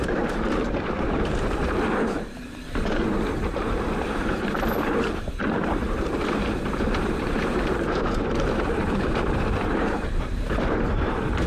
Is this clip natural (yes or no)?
no